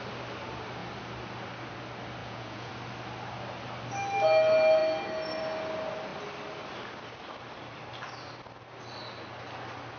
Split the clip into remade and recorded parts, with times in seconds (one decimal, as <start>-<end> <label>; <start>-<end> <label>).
0.0-2.2 recorded; 2.2-2.7 remade; 2.7-10.0 recorded